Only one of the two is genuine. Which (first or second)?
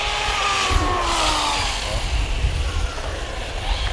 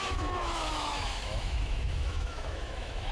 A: first